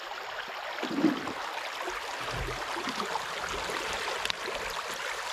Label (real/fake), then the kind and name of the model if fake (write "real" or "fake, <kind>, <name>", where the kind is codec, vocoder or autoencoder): real